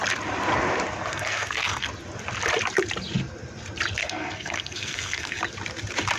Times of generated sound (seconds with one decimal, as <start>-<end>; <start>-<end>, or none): 1.1-1.9; 4.0-5.4

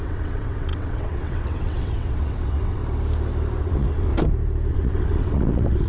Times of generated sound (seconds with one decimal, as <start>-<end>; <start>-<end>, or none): 0.0-2.8; 3.6-4.1; 4.7-5.9

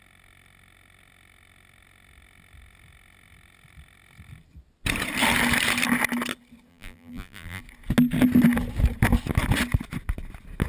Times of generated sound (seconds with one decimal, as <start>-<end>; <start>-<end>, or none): 6.7-7.6

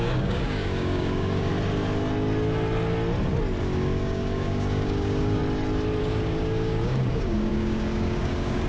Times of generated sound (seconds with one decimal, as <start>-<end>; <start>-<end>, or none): 0.0-1.5; 3.6-5.4; 6.0-8.7

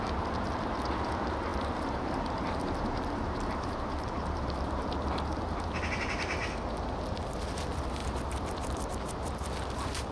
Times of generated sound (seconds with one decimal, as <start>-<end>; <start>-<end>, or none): 1.5-5.4

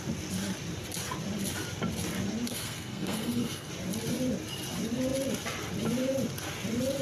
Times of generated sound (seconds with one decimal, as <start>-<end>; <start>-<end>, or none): 2.5-3.7